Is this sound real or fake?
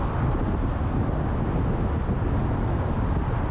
real